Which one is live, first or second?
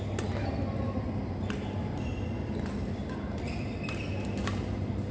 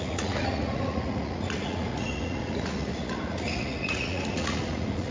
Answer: first